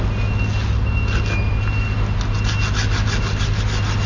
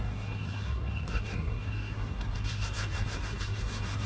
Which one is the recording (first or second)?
first